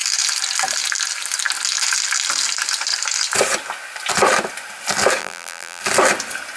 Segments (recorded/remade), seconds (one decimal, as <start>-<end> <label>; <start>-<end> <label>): 0.0-5.2 recorded; 5.2-5.8 remade; 5.8-6.6 recorded